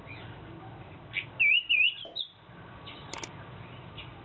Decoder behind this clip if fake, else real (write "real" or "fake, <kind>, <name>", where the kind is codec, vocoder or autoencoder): real